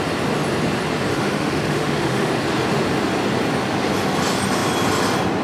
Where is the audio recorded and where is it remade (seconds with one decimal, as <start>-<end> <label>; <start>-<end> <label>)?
0.0-1.1 recorded; 1.1-2.3 remade; 2.3-5.4 recorded